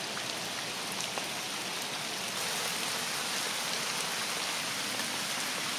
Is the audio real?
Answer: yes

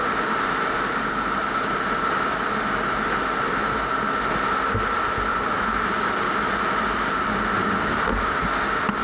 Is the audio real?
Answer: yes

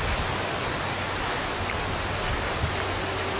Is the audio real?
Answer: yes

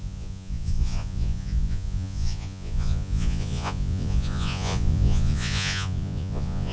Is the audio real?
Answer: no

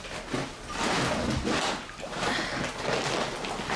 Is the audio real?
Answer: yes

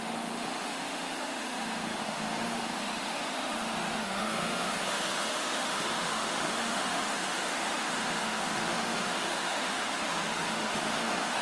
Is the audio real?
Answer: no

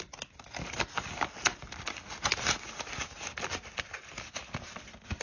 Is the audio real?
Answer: yes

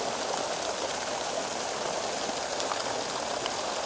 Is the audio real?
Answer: yes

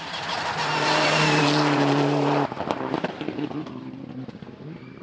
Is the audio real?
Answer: no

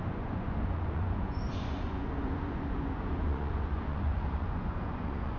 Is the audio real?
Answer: no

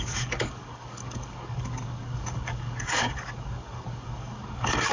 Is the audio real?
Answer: no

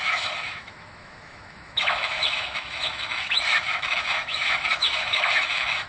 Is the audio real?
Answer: no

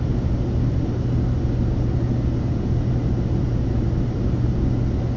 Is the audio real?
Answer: yes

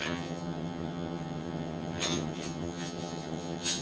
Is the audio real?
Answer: no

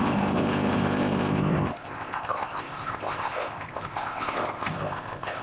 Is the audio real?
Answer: no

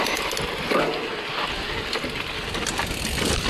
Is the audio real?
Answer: yes